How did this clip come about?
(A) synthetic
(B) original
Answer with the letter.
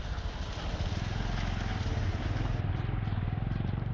B